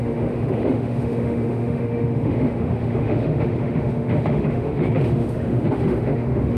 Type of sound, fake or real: fake